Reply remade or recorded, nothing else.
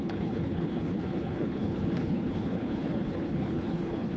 remade